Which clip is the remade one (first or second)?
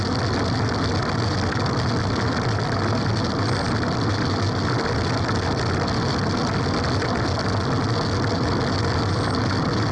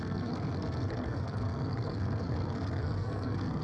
second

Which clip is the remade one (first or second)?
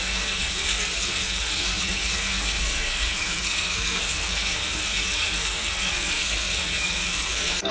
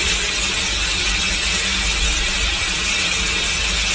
first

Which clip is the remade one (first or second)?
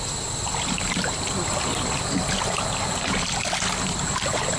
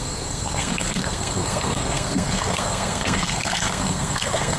second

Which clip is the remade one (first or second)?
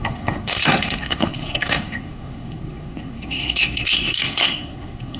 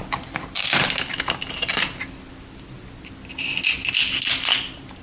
first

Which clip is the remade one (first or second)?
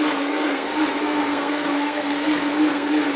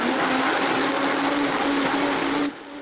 first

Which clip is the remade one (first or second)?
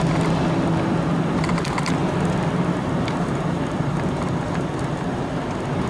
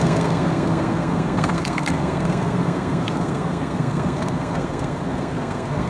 second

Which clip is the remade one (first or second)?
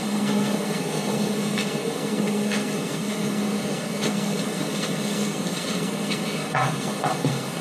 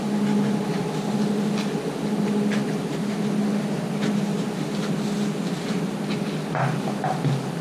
first